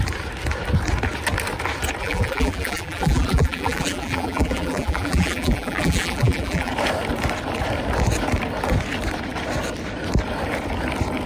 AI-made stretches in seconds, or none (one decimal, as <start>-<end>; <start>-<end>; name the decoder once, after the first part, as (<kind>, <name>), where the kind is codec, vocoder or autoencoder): 2.0-6.7 (vocoder, BigVGAN v2)

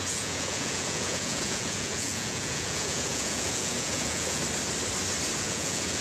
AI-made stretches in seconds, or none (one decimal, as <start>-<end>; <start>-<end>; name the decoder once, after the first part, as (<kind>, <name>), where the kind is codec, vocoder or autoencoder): 0.0-4.4 (vocoder, Vocos); 5.4-6.0

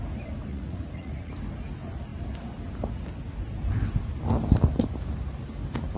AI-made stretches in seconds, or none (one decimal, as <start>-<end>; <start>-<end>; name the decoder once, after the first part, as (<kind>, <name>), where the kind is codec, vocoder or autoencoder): 0.5-1.3 (vocoder, Vocos)

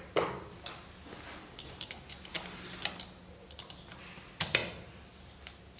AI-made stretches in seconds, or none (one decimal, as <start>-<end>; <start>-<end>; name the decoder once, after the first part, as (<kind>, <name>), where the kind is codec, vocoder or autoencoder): none